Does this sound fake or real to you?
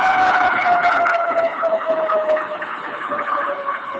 fake